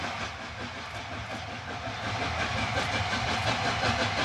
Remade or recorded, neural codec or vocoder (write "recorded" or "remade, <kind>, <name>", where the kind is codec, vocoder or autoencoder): recorded